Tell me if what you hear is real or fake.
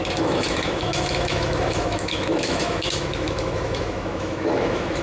fake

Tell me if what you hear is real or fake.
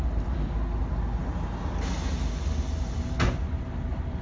real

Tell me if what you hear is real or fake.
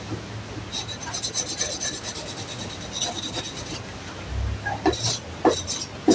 real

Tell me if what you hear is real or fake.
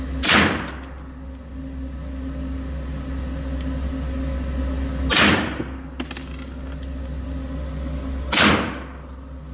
real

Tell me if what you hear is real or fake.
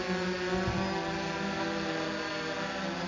real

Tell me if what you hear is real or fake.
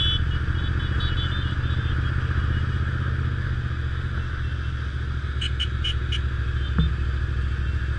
real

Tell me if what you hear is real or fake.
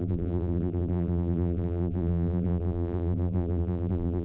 fake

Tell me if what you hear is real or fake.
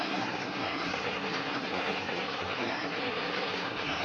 fake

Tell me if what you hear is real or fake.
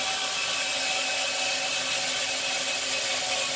real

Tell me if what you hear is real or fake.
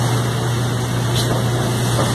real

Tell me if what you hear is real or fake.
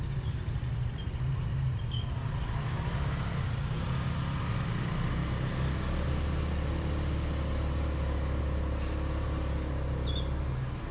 real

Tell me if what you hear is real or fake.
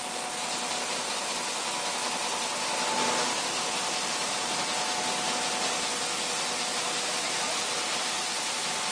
real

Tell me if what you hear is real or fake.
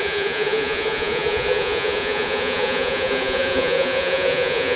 fake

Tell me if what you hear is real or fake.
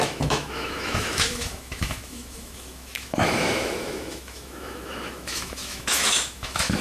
fake